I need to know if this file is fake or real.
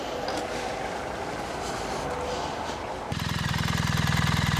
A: real